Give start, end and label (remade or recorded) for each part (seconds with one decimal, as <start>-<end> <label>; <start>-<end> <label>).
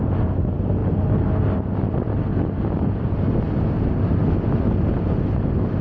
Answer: 0.0-5.8 recorded